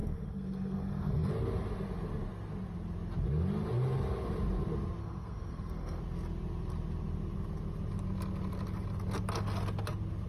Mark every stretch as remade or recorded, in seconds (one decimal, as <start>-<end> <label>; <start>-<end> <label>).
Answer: 0.0-1.3 remade; 1.3-5.0 recorded; 5.0-6.0 remade; 6.0-10.3 recorded